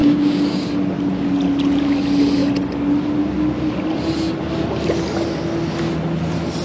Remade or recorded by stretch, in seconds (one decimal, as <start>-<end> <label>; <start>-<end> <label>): 0.0-0.7 remade; 0.7-6.6 recorded

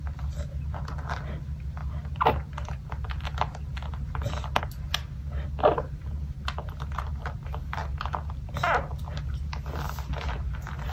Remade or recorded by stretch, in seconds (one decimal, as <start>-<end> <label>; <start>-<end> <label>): 0.0-10.9 recorded

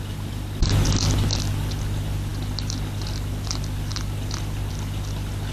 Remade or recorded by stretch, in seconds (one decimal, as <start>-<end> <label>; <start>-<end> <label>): 0.0-5.5 recorded

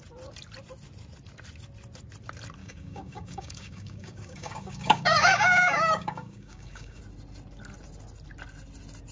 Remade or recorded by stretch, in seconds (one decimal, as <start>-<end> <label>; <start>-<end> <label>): 0.0-2.6 recorded; 2.6-7.0 remade; 7.0-9.1 recorded

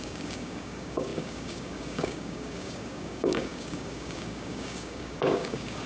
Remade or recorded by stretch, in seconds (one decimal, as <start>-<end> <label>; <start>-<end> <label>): 0.0-5.9 remade

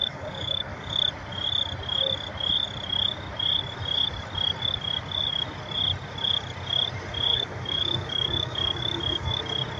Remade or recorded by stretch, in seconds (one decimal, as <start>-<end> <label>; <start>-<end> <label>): 0.0-0.9 remade; 0.9-7.3 recorded; 7.3-9.4 remade; 9.4-9.8 recorded